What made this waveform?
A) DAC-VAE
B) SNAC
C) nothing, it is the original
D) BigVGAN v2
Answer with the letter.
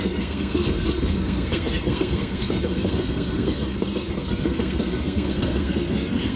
B